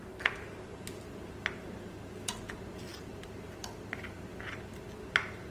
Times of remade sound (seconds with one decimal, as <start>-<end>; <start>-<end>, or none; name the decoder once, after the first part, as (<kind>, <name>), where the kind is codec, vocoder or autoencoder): 2.9-4.6 (vocoder, BigVGAN v2)